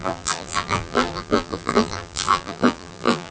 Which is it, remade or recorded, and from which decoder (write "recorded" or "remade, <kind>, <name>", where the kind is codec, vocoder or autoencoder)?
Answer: remade, vocoder, BigVGAN v2